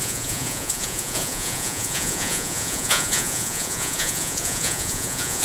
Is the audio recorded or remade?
remade